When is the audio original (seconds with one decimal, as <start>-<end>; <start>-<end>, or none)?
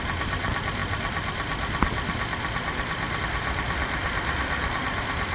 0.0-5.3